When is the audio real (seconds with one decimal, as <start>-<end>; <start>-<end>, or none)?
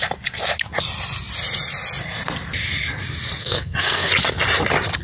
0.0-3.4; 4.1-5.0